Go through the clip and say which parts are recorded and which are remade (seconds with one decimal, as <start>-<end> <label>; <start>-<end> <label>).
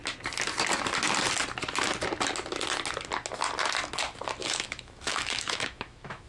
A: 0.0-4.4 recorded; 4.4-6.3 remade